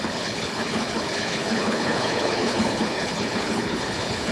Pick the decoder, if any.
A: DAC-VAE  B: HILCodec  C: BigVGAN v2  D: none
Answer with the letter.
B